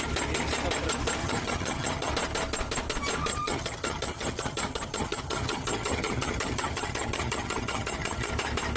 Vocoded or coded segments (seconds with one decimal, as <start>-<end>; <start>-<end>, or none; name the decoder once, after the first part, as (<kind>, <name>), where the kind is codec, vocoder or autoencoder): 1.2-2.1 (vocoder, HiFi-GAN); 3.3-8.3